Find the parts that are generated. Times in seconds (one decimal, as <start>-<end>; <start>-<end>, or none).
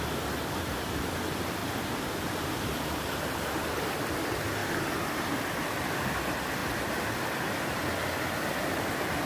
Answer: 1.6-3.7